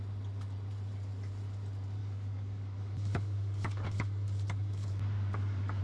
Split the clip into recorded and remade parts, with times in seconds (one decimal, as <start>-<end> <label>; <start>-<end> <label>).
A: 0.0-2.0 recorded; 2.0-5.8 remade